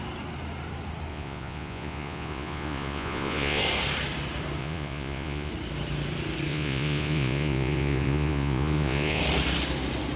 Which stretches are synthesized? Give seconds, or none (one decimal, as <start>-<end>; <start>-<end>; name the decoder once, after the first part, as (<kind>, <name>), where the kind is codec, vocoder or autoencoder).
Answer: 1.1-3.6 (vocoder, Vocos); 4.6-5.5; 6.5-9.2